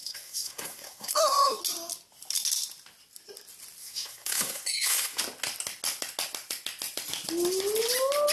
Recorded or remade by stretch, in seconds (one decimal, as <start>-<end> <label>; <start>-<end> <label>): 0.0-1.6 remade; 1.6-3.8 recorded; 3.8-5.2 remade; 5.2-8.3 recorded